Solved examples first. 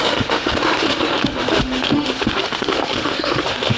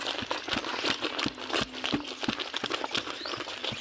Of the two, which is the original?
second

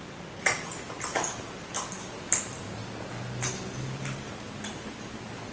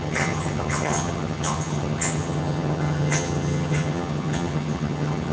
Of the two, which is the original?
first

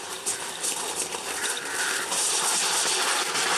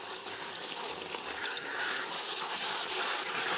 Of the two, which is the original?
first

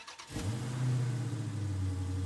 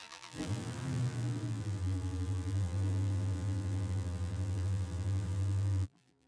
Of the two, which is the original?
first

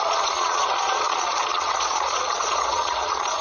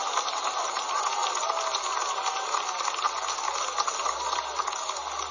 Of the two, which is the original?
second